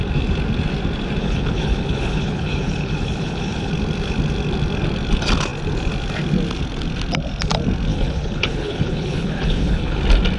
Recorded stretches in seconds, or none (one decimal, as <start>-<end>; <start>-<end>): 0.0-1.2; 3.7-7.9; 10.0-10.4

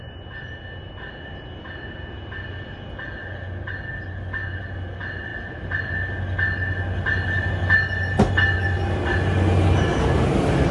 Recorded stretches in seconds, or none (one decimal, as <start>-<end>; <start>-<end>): 0.0-10.7